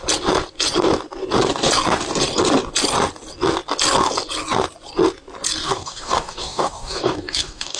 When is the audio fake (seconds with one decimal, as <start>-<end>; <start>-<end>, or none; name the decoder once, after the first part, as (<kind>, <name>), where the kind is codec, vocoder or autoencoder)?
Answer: 5.6-7.8 (codec, DAC)